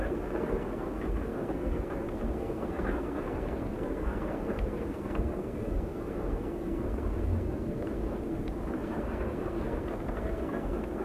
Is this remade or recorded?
remade